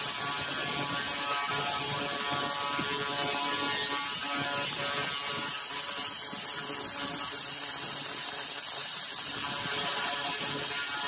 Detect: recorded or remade recorded